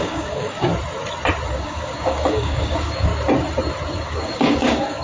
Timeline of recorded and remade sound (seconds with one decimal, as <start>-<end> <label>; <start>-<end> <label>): 0.0-0.7 remade; 0.7-1.5 recorded; 1.5-3.1 remade; 3.1-4.0 recorded; 4.0-5.0 remade